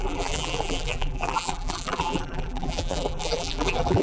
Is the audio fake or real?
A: fake